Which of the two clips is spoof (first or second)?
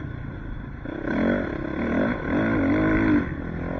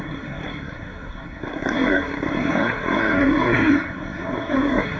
second